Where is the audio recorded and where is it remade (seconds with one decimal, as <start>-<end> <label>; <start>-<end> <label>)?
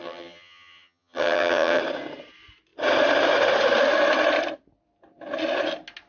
0.0-1.8 remade; 1.8-6.1 recorded